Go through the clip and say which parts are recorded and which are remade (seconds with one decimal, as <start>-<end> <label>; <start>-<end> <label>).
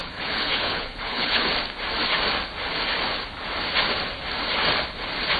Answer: 0.0-1.5 remade; 1.5-5.4 recorded